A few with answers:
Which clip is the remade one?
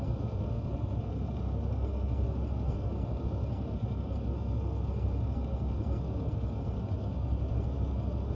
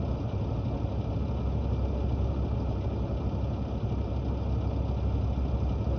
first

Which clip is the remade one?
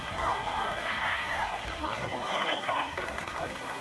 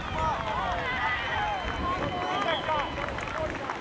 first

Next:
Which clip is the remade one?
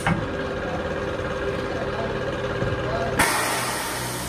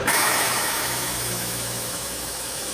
second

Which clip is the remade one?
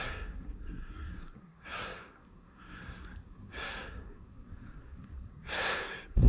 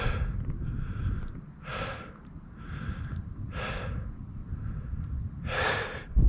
first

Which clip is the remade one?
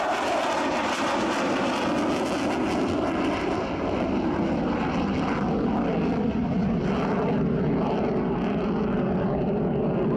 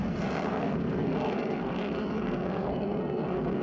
second